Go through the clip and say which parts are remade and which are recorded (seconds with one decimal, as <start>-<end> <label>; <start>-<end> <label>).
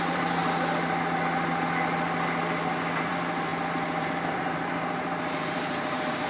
0.0-0.4 remade; 0.4-3.0 recorded; 3.0-3.5 remade; 3.5-4.0 recorded; 4.0-6.3 remade